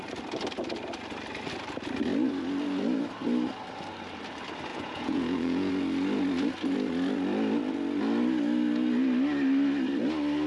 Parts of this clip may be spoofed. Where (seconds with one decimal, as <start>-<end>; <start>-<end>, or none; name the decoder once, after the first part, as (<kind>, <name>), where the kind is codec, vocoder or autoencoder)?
4.7-5.7 (vocoder, Vocos)